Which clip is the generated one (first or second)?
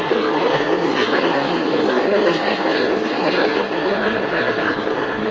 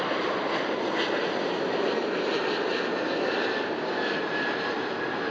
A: first